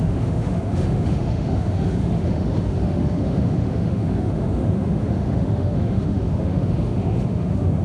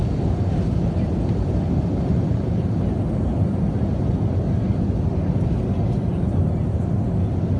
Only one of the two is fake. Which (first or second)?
first